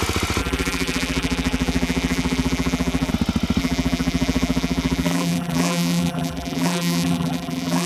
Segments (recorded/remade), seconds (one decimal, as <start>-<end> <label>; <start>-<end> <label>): 0.0-0.4 recorded; 0.4-3.1 remade; 3.1-3.6 recorded; 3.6-7.9 remade